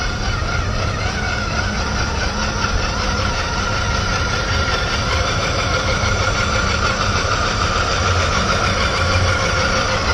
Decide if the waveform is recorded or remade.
remade